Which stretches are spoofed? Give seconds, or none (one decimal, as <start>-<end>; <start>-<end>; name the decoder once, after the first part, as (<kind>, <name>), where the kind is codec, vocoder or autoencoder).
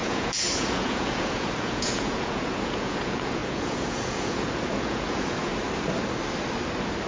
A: 0.0-5.5 (vocoder, Vocos)